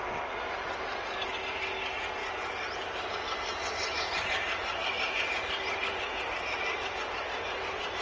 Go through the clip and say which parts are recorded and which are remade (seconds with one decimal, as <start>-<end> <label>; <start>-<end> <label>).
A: 0.0-2.2 recorded; 2.2-3.1 remade; 3.1-4.8 recorded; 4.8-6.9 remade; 6.9-8.0 recorded